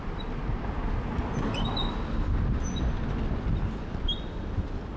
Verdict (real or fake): real